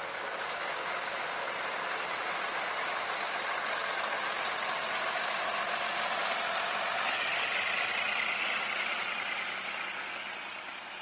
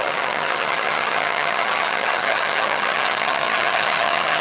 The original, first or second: first